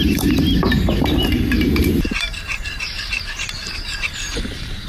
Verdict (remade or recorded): remade